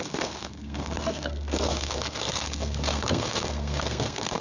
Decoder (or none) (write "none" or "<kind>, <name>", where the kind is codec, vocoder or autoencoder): codec, SNAC